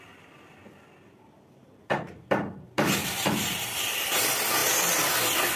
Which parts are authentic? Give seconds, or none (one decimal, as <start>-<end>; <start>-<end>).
0.0-1.6; 4.1-5.6